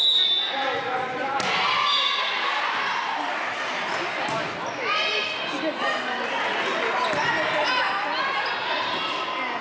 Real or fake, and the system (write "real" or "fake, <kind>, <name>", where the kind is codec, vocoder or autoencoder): real